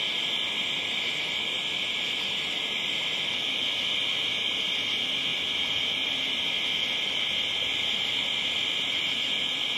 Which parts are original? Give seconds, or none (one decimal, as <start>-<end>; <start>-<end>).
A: 0.0-9.8